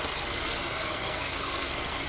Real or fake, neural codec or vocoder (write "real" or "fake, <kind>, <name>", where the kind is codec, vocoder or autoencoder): fake, codec, SNAC